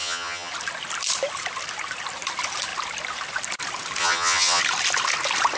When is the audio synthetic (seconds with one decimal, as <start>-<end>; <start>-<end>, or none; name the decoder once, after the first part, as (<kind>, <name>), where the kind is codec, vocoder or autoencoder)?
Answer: 0.0-0.5 (vocoder, HiFi-GAN); 4.0-4.6